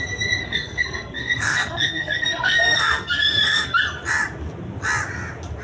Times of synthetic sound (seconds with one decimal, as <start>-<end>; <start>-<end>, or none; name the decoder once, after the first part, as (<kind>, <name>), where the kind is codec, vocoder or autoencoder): 0.4-3.8 (codec, SNAC)